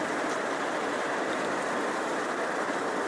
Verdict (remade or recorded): recorded